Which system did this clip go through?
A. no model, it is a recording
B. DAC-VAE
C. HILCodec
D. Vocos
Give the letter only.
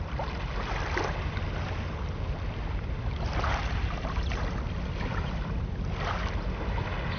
A